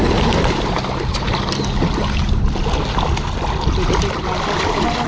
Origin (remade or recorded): recorded